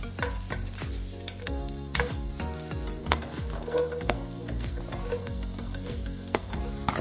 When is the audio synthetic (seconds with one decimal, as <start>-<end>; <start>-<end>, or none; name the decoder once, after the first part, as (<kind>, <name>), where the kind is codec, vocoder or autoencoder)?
1.4-2.3 (codec, SNAC); 3.0-4.8; 5.2-6.6